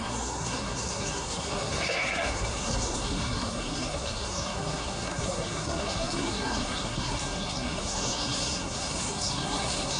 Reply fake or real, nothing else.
fake